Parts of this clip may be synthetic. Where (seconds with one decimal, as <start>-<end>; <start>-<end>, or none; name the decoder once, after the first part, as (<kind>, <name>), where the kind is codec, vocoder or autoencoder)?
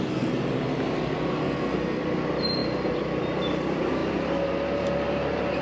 1.4-2.0 (codec, SNAC)